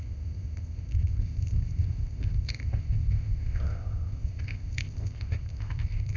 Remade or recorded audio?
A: remade